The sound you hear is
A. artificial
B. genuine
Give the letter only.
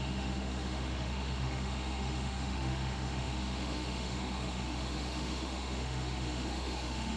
A